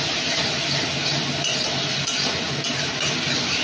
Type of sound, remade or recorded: recorded